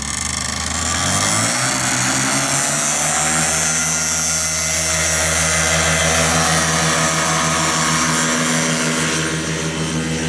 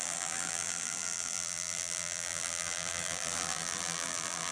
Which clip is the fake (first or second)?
second